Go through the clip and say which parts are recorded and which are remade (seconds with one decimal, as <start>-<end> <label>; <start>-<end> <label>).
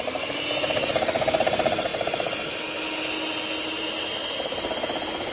0.0-5.3 recorded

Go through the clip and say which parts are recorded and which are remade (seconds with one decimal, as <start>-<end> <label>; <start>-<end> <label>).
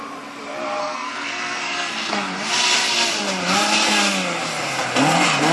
0.0-0.8 recorded; 0.8-2.1 remade; 2.1-5.5 recorded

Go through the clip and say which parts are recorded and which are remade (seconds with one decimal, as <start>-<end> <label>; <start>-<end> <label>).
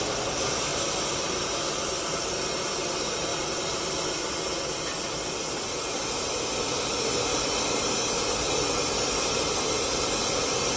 0.0-3.3 recorded; 3.3-3.8 remade; 3.8-10.8 recorded